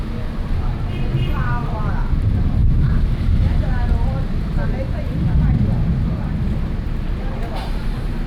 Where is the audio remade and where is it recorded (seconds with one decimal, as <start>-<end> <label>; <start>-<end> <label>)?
0.0-1.1 recorded; 1.1-1.9 remade; 1.9-8.3 recorded